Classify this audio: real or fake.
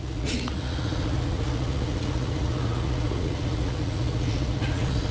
fake